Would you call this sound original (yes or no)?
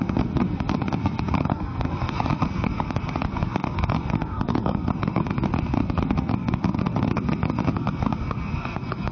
no